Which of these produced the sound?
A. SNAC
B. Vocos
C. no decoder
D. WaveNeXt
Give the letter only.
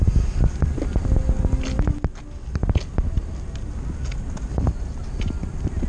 C